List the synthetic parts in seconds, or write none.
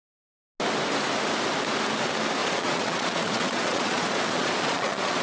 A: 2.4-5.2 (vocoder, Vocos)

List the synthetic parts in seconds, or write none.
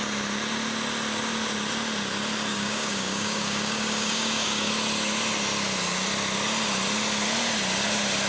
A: 2.5-4.7 (codec, DAC)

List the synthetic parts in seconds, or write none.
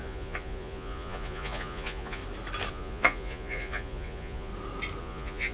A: 0.0-2.2 (vocoder, Vocos); 2.7-4.5; 5.0-5.5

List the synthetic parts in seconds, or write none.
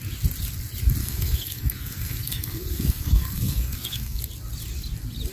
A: 1.0-4.2 (codec, SNAC)